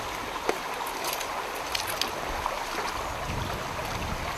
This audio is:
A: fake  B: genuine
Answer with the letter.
B